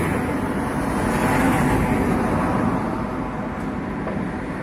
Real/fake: real